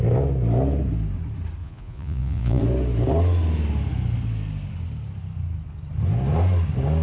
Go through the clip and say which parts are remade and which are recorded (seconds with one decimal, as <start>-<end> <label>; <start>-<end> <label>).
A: 0.0-1.6 recorded; 1.6-2.6 remade; 2.6-7.0 recorded